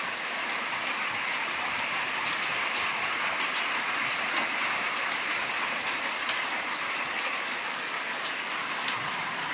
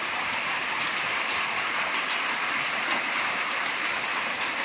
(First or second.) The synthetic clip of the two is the second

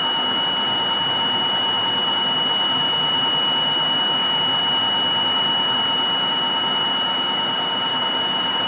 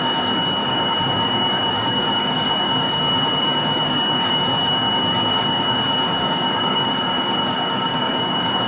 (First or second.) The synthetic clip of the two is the second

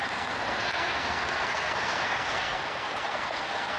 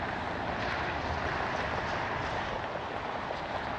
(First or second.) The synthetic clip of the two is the first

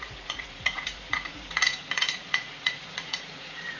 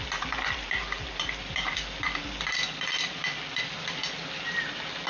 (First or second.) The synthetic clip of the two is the first